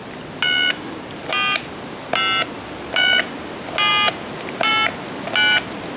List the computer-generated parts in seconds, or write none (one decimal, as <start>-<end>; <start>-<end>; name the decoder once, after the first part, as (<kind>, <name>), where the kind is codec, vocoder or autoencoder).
none